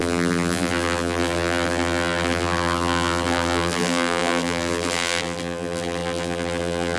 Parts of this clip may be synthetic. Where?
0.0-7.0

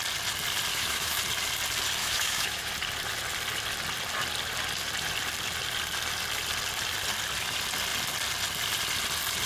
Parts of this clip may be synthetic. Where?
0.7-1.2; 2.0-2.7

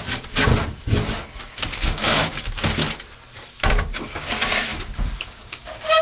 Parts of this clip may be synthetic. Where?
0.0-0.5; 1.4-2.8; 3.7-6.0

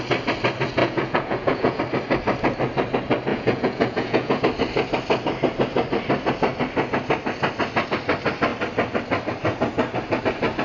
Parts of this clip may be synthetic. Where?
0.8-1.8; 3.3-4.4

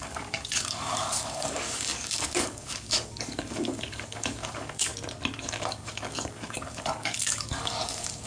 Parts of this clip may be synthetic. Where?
0.0-4.9; 5.4-8.3

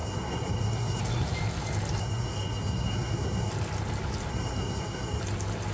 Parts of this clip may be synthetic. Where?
0.0-1.0; 2.0-3.5; 4.3-5.2